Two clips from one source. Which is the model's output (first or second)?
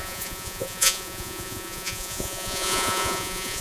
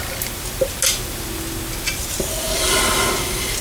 first